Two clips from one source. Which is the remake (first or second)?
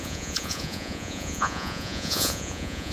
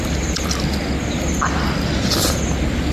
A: first